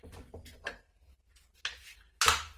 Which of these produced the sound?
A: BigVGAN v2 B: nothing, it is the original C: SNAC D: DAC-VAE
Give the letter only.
B